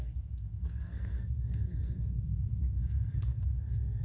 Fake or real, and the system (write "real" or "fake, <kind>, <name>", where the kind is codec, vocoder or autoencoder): fake, codec, SNAC